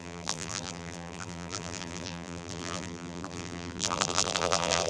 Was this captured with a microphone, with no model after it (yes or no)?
no